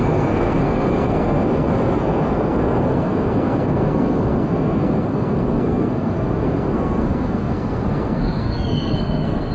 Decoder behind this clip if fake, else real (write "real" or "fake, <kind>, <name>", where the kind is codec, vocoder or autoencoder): fake, codec, SNAC